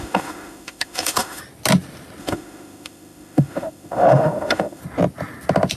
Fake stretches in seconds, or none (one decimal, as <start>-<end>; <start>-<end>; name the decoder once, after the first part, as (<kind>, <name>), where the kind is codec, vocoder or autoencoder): 0.0-1.4 (autoencoder, DAC-VAE); 2.2-4.8